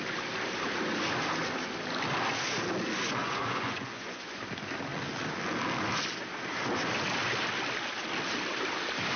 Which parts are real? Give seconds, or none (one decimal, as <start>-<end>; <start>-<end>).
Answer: 0.0-3.2; 4.4-9.2